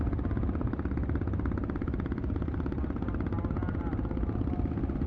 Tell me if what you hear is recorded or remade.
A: recorded